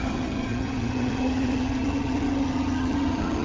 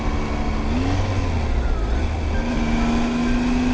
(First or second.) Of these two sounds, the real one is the second